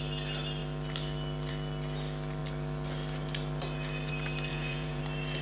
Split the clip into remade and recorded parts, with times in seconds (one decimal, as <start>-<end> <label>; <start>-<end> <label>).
0.0-4.5 recorded; 4.5-5.0 remade; 5.0-5.4 recorded